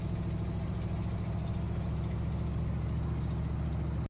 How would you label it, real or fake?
real